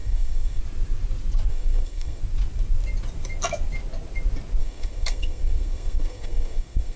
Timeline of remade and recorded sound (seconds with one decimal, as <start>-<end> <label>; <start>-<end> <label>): 0.0-0.6 remade; 0.6-1.5 recorded; 1.5-2.2 remade; 2.2-4.6 recorded; 4.6-7.0 remade